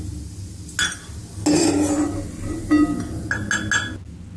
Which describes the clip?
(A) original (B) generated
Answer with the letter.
A